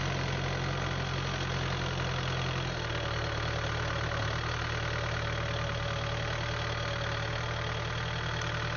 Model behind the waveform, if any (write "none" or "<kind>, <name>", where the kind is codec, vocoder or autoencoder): none